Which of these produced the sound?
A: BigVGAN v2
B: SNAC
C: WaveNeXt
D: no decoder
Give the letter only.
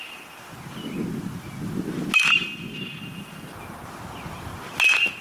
D